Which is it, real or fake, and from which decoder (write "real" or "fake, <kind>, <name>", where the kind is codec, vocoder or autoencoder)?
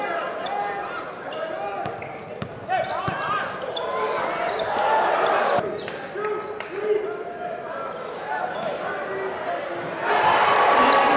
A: real